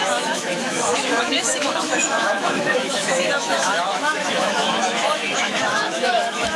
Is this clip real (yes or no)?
no